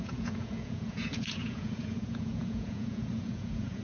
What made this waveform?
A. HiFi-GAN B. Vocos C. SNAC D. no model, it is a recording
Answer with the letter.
B